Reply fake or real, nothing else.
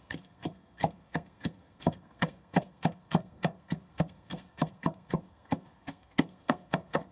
fake